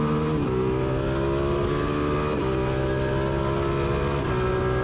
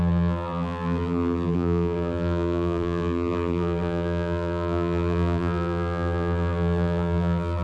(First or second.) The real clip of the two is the first